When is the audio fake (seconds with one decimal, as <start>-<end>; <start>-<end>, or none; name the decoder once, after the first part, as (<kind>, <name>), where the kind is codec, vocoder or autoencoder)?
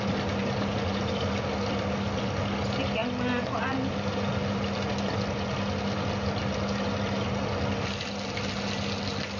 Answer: none